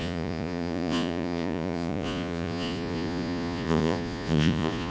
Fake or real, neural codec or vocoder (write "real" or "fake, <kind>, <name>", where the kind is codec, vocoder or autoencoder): fake, vocoder, Vocos